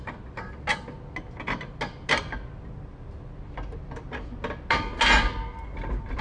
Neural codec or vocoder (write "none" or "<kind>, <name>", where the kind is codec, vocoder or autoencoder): none